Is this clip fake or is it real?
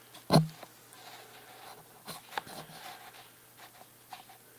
real